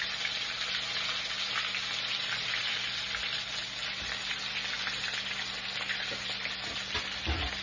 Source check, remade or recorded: recorded